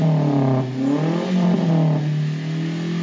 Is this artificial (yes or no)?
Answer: no